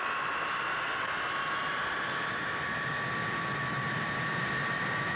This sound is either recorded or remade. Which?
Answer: recorded